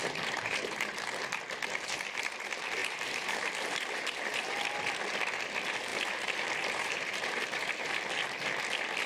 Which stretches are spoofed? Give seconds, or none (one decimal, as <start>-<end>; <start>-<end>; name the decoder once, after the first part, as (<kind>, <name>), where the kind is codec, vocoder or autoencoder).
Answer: 0.0-0.9 (vocoder, BigVGAN v2); 2.8-4.6; 5.9-8.0